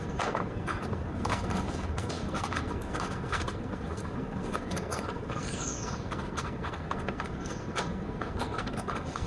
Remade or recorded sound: remade